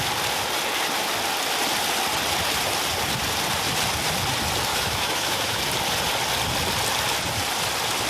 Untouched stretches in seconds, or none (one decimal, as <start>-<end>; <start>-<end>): 0.0-4.7; 5.6-8.1